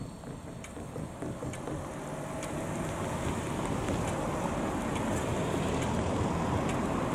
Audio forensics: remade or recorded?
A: recorded